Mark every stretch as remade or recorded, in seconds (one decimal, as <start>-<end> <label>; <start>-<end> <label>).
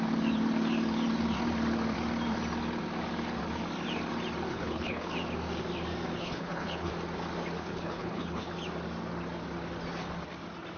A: 0.0-4.5 recorded; 4.5-5.1 remade; 5.1-6.2 recorded; 6.2-6.9 remade; 6.9-7.6 recorded; 7.6-8.5 remade; 8.5-10.8 recorded